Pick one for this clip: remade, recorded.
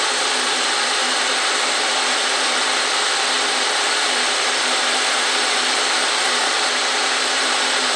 remade